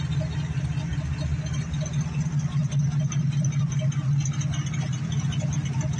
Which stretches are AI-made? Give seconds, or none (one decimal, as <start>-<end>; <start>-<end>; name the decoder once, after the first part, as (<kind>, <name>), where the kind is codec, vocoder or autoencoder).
none